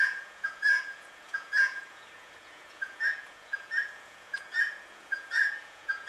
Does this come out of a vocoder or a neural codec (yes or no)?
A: yes